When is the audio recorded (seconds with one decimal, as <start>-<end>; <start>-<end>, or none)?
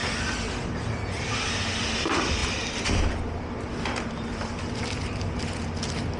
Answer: 0.0-6.2